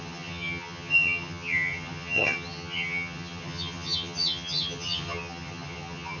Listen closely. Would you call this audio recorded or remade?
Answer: remade